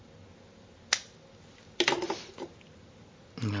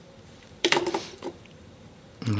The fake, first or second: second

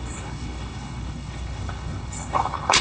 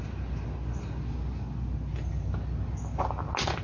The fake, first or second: first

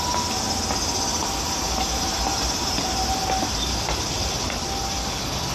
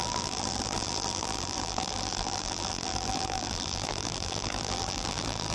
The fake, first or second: second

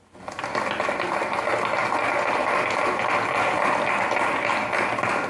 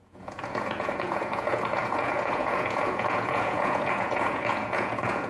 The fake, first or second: second